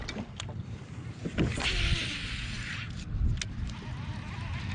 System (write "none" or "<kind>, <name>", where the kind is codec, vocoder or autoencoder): none